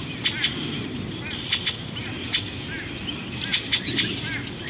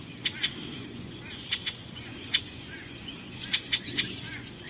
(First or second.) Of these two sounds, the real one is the first